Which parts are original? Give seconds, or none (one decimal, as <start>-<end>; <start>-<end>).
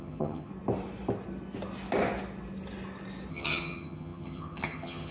0.5-3.3